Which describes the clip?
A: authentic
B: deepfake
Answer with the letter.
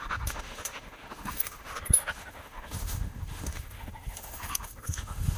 B